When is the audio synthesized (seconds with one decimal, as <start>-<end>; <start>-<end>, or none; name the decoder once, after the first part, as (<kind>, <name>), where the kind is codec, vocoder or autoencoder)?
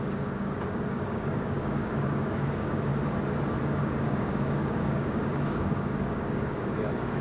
0.0-2.9 (codec, DAC); 3.8-7.2